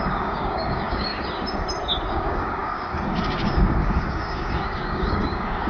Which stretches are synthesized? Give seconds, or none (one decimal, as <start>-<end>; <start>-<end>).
0.0-1.1; 2.1-5.7